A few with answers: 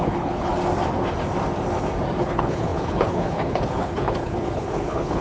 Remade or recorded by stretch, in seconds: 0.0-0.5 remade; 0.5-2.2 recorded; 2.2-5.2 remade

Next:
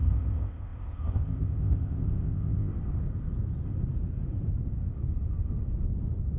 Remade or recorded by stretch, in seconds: 0.0-2.7 remade; 2.7-6.4 recorded

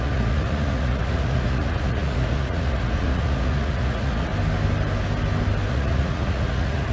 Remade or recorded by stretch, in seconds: 0.0-4.3 remade; 4.3-5.7 recorded; 5.7-6.9 remade

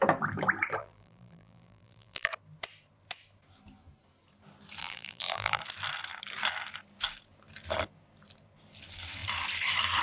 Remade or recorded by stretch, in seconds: 0.0-0.8 recorded; 0.8-2.3 remade; 2.3-4.8 recorded; 4.8-5.6 remade; 5.6-10.0 recorded

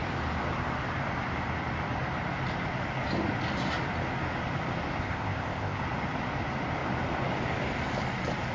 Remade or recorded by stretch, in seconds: 0.0-5.0 recorded; 5.0-5.8 remade; 5.8-8.5 recorded

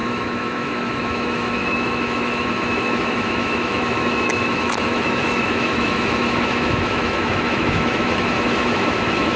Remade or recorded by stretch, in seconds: 0.0-9.4 remade

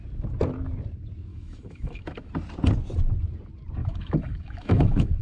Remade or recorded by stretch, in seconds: 0.0-1.3 recorded; 1.3-2.3 remade; 2.3-3.8 recorded; 3.8-5.2 remade

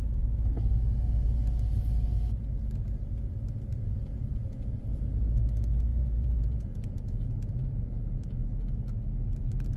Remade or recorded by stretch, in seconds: 0.0-3.7 recorded; 3.7-4.8 remade; 4.8-5.9 recorded; 5.9-8.5 remade; 8.5-9.8 recorded